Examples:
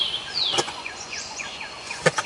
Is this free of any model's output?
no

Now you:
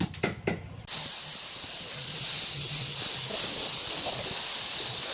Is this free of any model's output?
yes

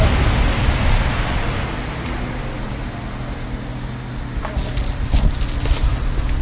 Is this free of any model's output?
yes